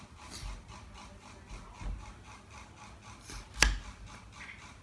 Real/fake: real